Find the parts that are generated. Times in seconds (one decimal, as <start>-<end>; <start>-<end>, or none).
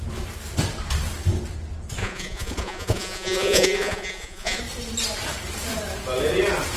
2.0-4.6